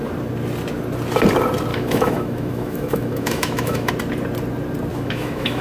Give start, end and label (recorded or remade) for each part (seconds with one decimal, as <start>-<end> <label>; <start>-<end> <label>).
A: 0.0-1.7 recorded; 1.7-3.9 remade; 3.9-4.9 recorded; 4.9-5.6 remade